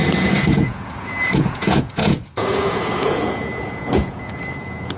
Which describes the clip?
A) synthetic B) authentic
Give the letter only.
A